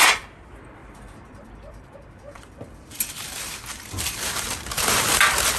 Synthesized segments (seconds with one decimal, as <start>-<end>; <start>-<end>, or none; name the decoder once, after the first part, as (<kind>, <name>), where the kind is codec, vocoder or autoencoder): 0.8-4.2 (vocoder, BigVGAN v2)